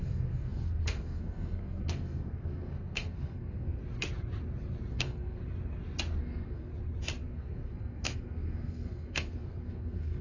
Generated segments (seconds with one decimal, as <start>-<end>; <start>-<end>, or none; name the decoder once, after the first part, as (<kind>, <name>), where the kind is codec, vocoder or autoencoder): 0.0-3.8 (codec, SNAC); 4.9-5.4; 6.2-6.7; 7.2-10.2

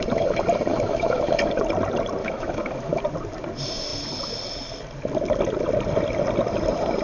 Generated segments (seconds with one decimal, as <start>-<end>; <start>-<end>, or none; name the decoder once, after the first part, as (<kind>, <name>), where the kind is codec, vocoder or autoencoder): 0.7-1.4 (autoencoder, DAC-VAE); 2.2-3.0

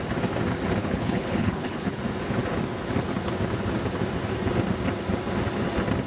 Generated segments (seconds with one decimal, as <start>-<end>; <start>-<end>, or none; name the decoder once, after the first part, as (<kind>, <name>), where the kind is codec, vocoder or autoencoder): 0.8-2.0 (codec, HILCodec)